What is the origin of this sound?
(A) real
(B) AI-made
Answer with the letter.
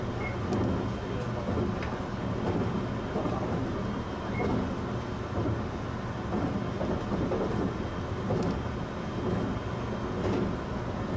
A